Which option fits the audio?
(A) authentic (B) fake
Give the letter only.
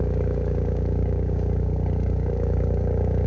B